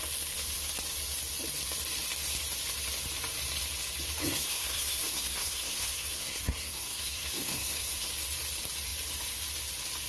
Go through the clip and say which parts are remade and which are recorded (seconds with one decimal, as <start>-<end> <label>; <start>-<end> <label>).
0.0-4.2 recorded; 4.2-8.1 remade; 8.1-10.1 recorded